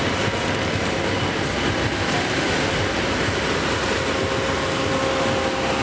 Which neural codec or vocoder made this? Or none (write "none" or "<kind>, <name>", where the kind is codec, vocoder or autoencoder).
none